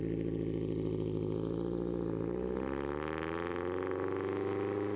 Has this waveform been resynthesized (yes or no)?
no